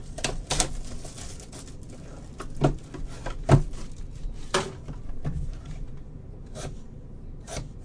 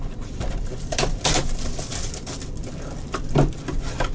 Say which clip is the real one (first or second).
first